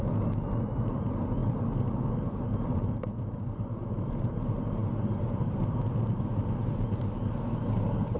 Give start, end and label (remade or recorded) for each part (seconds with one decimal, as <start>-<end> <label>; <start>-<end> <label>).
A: 0.0-8.2 recorded